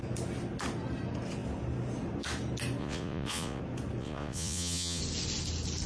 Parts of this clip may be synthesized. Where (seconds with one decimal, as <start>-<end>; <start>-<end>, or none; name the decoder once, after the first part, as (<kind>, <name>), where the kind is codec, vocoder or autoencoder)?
2.8-3.6 (vocoder, Vocos); 4.0-5.0